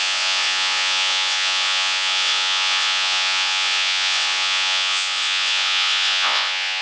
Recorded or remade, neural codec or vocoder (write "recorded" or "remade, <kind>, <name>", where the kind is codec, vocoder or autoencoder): remade, vocoder, Vocos